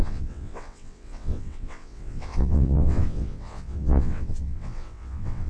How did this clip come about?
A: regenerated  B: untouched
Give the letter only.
A